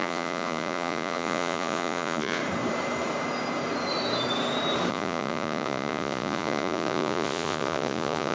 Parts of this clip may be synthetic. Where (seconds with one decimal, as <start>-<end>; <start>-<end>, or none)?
0.0-2.4; 4.9-8.3